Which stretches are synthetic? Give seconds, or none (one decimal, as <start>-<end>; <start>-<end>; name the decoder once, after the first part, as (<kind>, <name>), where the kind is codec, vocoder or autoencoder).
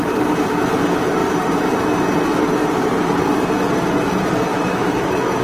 4.5-5.4 (autoencoder, DAC-VAE)